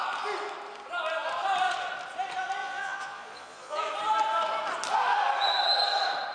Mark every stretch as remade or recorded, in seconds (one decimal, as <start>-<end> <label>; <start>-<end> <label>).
0.0-2.6 recorded; 2.6-3.9 remade; 3.9-6.3 recorded